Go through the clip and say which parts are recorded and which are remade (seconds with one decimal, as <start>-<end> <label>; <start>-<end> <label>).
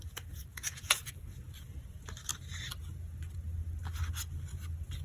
0.0-0.5 recorded; 0.5-1.1 remade; 1.1-5.0 recorded